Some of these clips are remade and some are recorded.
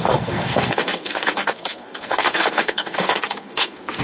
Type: remade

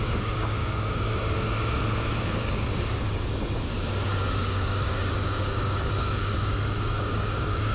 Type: remade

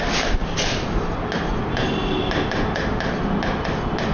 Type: recorded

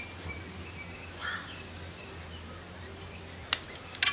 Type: recorded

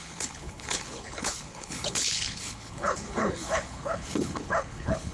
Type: remade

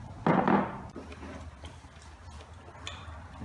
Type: recorded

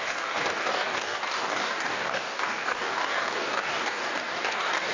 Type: remade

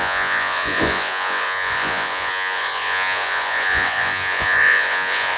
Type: remade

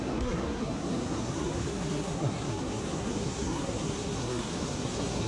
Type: remade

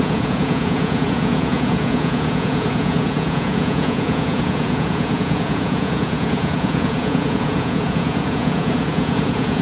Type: remade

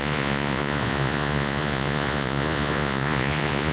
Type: remade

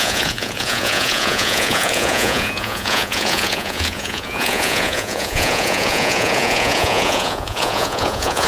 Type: remade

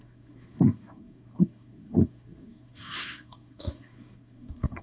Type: remade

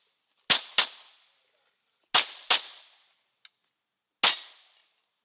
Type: recorded